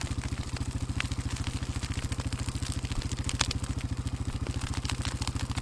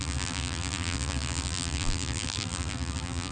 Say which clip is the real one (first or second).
first